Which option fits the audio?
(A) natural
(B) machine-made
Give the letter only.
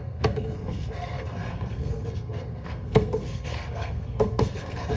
B